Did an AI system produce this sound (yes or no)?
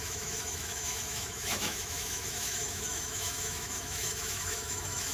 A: yes